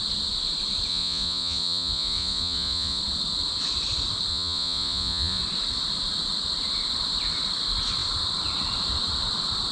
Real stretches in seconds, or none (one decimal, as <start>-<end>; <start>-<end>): 0.0-0.9; 3.0-4.3; 5.4-9.7